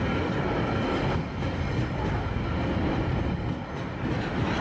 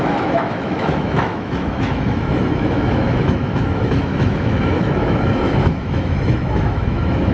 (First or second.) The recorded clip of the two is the first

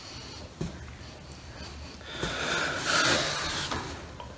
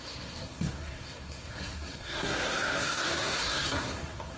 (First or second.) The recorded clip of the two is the first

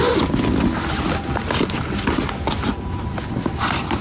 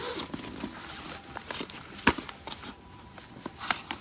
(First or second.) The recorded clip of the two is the first